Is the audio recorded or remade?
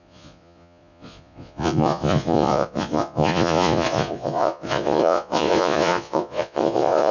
remade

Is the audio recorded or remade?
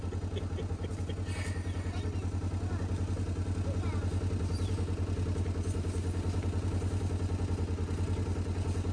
recorded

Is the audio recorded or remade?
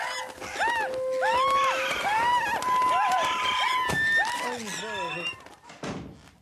recorded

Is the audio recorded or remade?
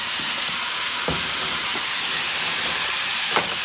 remade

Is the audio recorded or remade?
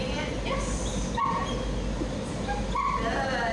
recorded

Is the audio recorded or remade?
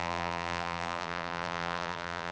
remade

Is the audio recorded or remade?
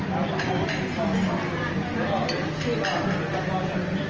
recorded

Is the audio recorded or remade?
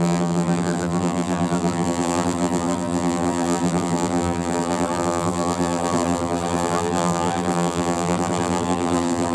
remade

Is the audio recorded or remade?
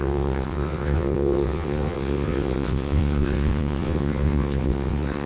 remade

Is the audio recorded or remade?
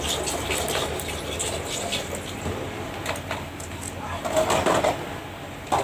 recorded